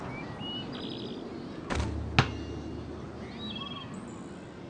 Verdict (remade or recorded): recorded